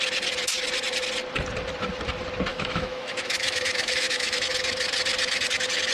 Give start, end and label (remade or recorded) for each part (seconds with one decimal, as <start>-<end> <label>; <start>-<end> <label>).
0.0-2.5 recorded; 2.5-4.4 remade; 4.4-5.9 recorded